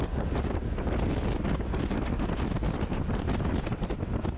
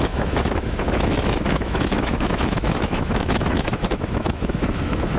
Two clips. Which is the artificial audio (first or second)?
second